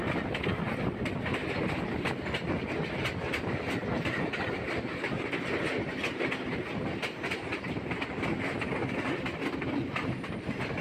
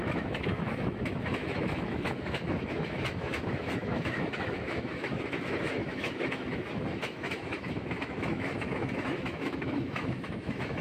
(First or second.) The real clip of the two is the first